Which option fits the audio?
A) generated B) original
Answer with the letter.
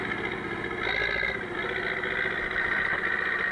B